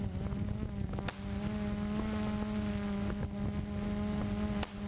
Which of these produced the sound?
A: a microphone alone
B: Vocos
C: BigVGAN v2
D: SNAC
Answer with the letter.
A